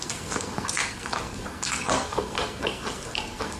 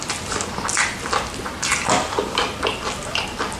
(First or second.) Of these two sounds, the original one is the second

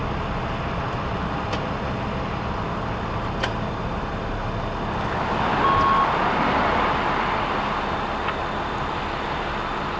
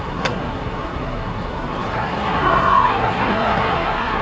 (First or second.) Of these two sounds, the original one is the first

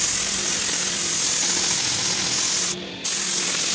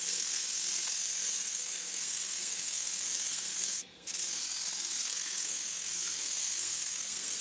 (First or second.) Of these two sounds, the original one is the first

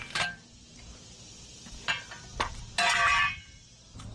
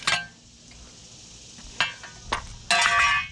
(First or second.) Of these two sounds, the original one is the second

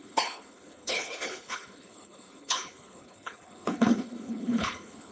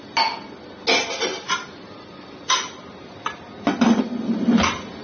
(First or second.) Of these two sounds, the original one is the second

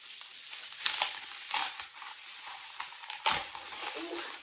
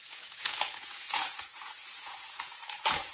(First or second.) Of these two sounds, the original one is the first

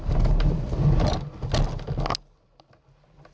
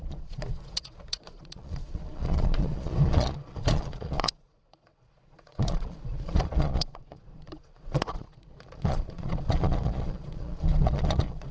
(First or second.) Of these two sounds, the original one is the first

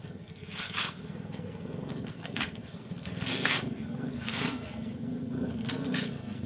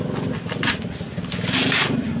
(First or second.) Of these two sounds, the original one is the second